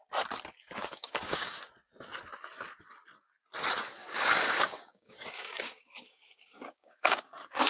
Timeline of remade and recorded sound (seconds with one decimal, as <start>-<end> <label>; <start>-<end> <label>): 0.0-0.8 recorded; 0.8-1.6 remade; 1.6-4.0 recorded; 4.0-7.7 remade